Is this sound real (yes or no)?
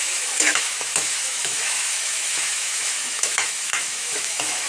no